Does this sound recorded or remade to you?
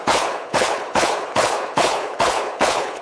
remade